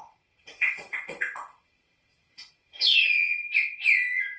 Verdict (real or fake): fake